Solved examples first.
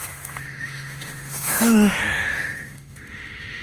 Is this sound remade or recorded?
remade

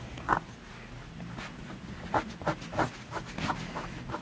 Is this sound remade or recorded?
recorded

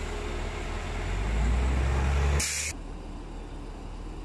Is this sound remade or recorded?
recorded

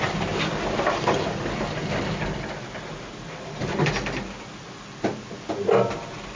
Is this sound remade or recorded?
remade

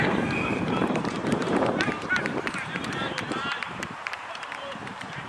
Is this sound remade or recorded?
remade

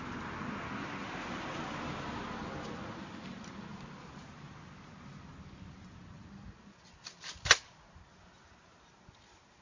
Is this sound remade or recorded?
recorded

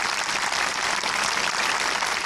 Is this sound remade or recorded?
remade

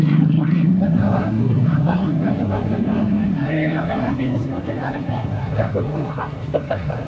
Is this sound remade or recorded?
remade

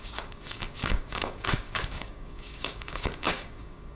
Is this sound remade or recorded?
remade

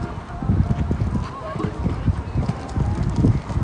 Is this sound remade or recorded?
recorded